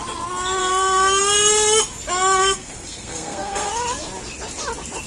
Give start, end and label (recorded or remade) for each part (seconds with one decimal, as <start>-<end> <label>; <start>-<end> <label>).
0.0-0.6 recorded; 0.6-1.2 remade; 1.2-2.4 recorded; 2.4-3.7 remade; 3.7-5.1 recorded